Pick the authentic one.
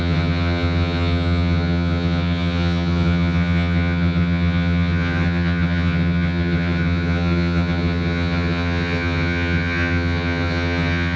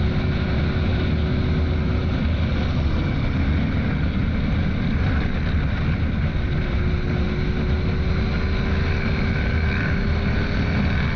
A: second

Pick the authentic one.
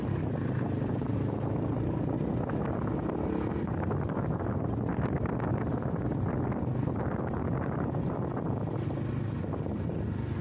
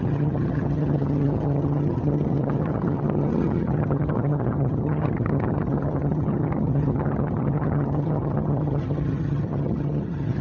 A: first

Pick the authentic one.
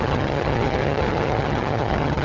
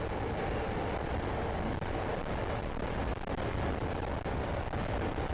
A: second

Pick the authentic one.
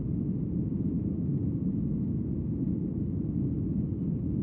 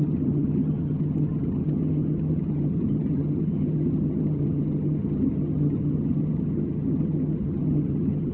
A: first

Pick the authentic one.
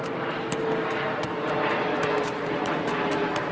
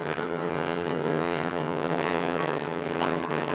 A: first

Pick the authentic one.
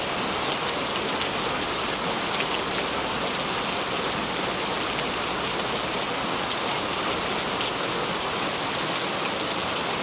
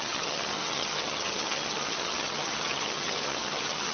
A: first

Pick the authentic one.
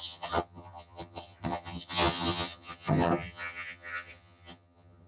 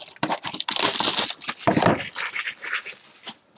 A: second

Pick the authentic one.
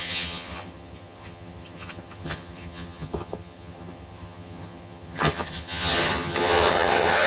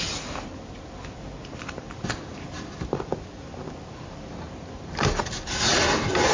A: second